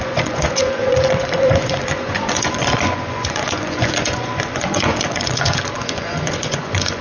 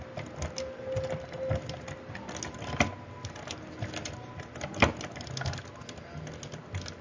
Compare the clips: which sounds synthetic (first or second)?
first